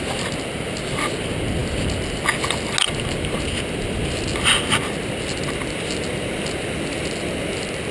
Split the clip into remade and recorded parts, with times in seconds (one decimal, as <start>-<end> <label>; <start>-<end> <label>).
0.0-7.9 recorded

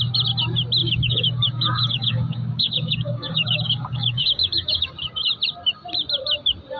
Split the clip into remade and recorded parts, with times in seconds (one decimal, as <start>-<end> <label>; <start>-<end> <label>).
0.0-0.8 recorded; 0.8-4.9 remade; 4.9-6.8 recorded

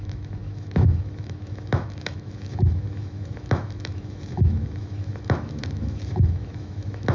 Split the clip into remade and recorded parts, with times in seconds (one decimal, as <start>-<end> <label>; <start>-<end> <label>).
0.0-7.1 remade